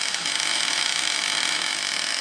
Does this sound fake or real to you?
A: fake